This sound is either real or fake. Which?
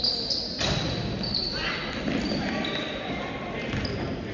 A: real